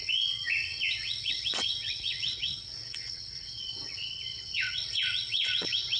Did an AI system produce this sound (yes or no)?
yes